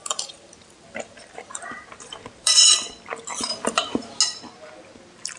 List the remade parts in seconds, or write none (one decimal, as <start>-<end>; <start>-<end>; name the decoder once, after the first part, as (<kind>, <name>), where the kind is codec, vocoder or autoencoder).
0.0-2.5 (vocoder, BigVGAN v2); 3.5-4.2